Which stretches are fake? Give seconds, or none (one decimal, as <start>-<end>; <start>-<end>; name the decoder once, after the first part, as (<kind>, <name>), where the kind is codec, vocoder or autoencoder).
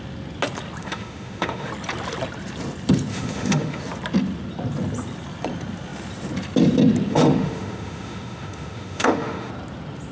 0.8-1.7 (autoencoder, DAC-VAE); 3.1-3.8; 7.1-9.5